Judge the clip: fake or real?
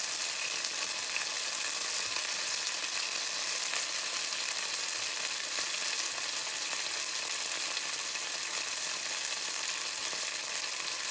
real